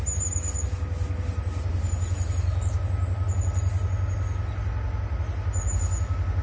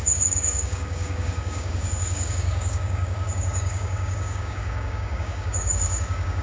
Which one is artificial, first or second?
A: second